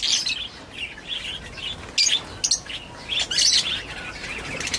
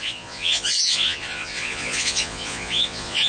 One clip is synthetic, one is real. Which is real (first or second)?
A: first